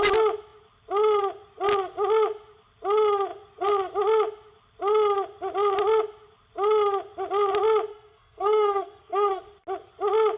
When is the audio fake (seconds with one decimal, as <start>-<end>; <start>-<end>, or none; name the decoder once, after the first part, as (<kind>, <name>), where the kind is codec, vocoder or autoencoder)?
7.9-9.4 (codec, SNAC)